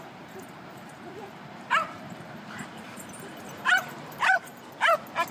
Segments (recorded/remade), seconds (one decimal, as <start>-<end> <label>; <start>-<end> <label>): 0.0-4.5 remade; 4.5-5.3 recorded